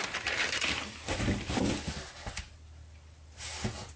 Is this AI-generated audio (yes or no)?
no